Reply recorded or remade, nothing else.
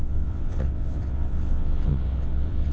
remade